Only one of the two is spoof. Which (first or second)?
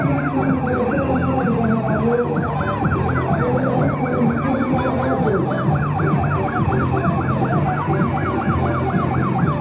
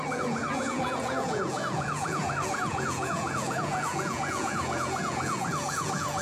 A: second